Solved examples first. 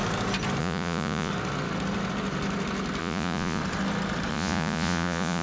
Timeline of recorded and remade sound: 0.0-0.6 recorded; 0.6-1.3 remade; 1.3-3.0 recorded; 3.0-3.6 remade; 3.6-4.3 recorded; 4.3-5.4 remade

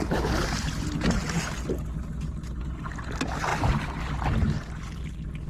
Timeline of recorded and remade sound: 0.0-5.5 recorded

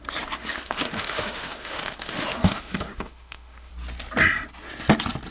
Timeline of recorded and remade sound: 0.0-0.5 recorded; 0.5-3.7 remade; 3.7-5.3 recorded

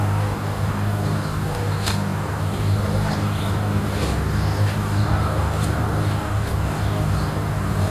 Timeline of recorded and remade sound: 0.0-7.9 remade

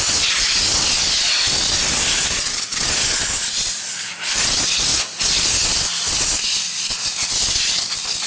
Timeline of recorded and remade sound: 0.0-8.3 recorded